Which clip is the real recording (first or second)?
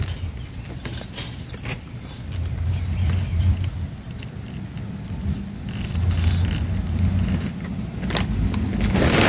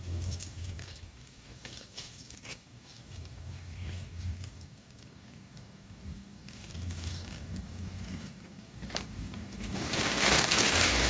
first